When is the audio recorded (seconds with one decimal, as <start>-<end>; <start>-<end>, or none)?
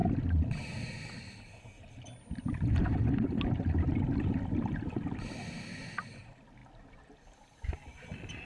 0.0-8.5